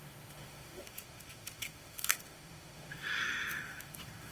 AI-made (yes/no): yes